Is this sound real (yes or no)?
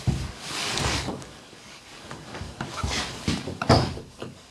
no